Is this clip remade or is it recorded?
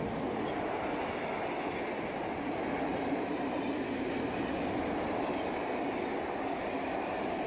recorded